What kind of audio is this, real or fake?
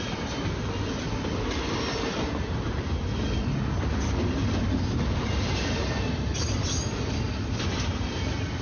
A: real